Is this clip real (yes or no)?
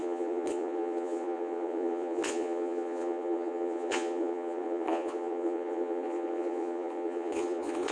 no